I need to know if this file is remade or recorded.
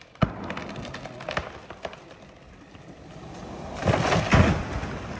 recorded